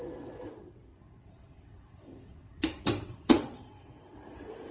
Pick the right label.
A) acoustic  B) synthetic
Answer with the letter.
B